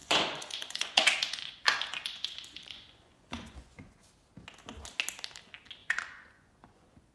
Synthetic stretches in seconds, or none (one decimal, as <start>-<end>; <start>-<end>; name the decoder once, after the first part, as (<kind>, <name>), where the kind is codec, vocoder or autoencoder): 0.0-4.1 (vocoder, Vocos); 5.8-7.1